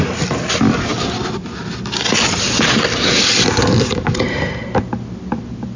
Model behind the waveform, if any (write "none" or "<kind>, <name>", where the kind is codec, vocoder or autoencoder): none